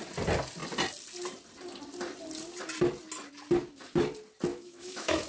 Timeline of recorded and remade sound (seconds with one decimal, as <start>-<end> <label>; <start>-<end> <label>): 0.0-4.5 recorded; 4.5-5.3 remade